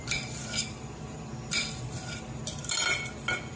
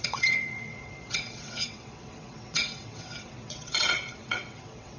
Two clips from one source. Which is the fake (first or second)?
second